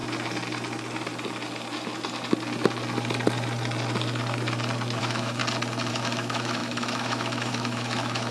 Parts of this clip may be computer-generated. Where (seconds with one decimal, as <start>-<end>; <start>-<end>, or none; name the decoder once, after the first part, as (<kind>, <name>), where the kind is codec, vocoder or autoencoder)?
5.0-5.4 (autoencoder, DAC-VAE); 5.9-8.3